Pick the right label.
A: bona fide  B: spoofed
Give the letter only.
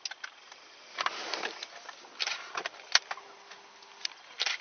A